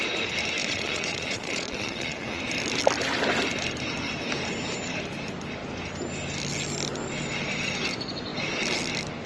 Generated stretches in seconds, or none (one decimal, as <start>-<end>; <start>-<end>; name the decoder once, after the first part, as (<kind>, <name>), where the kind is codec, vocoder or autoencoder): 0.6-2.4 (vocoder, Vocos)